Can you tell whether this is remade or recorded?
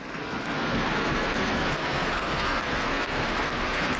remade